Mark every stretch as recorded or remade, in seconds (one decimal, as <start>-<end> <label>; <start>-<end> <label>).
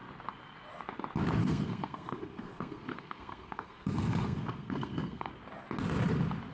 0.0-1.4 recorded; 1.4-5.3 remade; 5.3-6.5 recorded